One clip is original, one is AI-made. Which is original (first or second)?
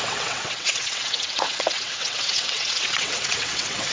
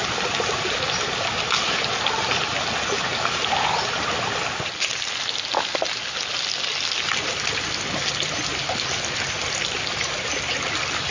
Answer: second